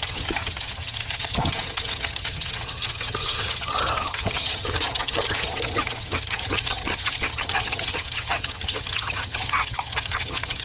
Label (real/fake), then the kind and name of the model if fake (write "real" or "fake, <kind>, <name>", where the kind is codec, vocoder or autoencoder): fake, vocoder, HiFi-GAN